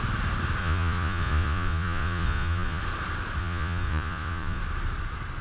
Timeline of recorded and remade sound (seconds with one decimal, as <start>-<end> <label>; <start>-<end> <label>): 0.0-0.6 recorded; 0.6-2.8 remade; 2.8-3.4 recorded; 3.4-4.6 remade; 4.6-5.4 recorded